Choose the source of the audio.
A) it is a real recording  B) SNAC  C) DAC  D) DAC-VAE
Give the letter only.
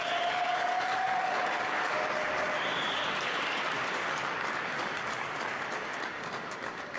C